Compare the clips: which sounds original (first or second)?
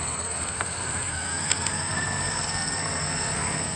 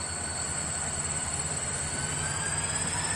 second